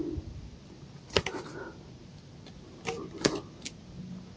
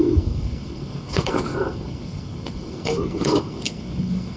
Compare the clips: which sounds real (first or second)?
first